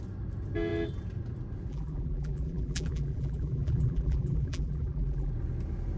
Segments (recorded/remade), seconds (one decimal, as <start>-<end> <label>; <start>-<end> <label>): 0.0-1.7 recorded; 1.7-5.3 remade; 5.3-6.0 recorded